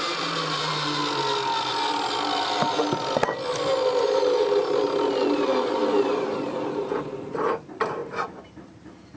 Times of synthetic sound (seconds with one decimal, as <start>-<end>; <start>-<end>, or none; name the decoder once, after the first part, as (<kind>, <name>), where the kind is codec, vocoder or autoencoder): 0.0-1.0 (vocoder, BigVGAN v2); 4.0-4.6; 5.2-9.2